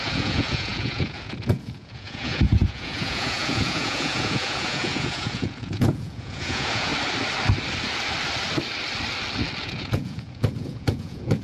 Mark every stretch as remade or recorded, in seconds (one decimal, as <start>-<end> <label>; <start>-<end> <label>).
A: 0.0-6.9 remade; 6.9-9.6 recorded; 9.6-11.4 remade